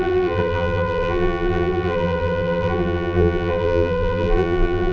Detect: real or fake fake